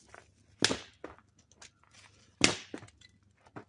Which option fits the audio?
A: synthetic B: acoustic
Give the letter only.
B